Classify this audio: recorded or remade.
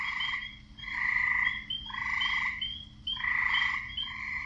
recorded